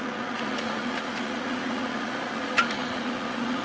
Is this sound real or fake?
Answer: fake